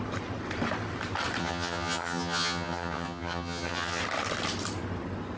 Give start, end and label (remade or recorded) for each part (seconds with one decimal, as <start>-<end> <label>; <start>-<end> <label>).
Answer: 0.0-1.4 recorded; 1.4-4.0 remade; 4.0-5.4 recorded